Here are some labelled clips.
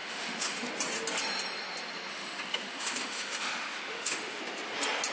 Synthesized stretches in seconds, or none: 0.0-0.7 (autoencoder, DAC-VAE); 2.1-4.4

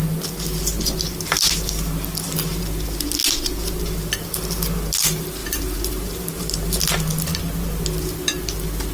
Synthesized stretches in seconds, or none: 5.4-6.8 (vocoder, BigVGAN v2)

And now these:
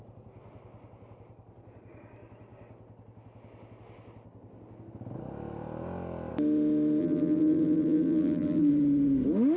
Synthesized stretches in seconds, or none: 7.0-8.7 (vocoder, BigVGAN v2)

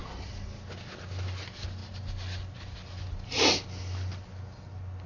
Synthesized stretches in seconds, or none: none

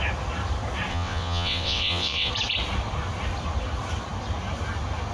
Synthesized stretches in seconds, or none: 0.9-2.3 (vocoder, WaveNeXt)

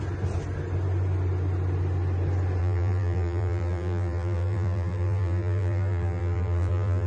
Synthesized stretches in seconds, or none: 2.6-7.1 (vocoder, BigVGAN v2)